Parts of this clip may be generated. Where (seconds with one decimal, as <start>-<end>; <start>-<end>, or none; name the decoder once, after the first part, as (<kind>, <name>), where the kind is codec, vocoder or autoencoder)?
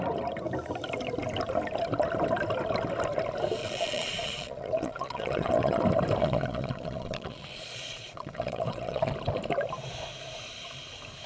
3.6-5.8 (vocoder, Vocos); 6.2-9.1